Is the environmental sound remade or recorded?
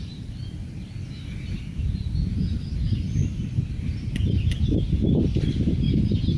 recorded